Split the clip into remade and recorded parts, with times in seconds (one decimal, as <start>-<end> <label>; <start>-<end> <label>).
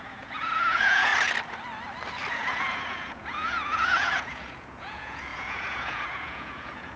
0.0-1.1 remade; 1.1-2.3 recorded; 2.3-7.0 remade